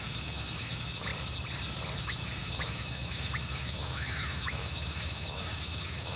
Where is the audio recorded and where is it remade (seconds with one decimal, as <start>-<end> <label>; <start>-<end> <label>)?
0.0-1.1 remade; 1.1-2.0 recorded; 2.0-6.2 remade